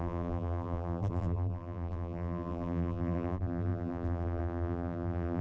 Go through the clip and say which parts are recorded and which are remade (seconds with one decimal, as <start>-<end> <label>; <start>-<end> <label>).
0.0-5.4 remade